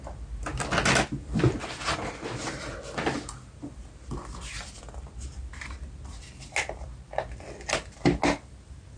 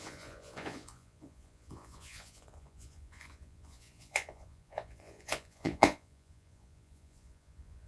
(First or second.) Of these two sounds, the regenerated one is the second